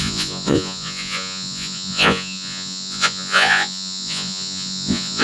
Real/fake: fake